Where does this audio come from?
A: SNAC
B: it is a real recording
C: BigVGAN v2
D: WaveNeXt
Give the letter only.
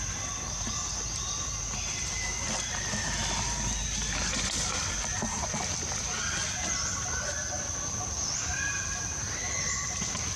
B